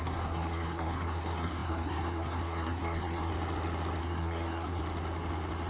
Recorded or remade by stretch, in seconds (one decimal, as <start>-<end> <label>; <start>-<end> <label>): 0.0-3.3 remade; 3.3-4.0 recorded; 4.0-4.8 remade; 4.8-5.7 recorded